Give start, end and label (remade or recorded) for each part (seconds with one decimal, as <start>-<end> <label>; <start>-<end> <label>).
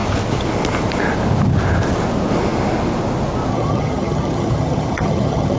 0.0-3.5 recorded; 3.5-5.6 remade